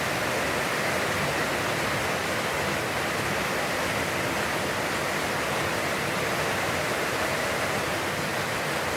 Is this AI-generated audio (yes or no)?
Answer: no